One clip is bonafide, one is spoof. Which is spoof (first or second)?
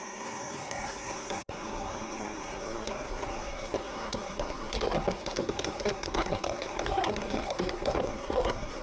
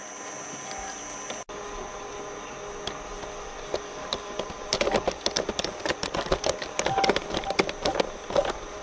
first